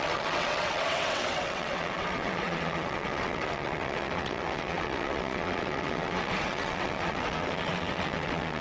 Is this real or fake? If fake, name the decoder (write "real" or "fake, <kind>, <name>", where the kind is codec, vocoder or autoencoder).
fake, vocoder, WaveNeXt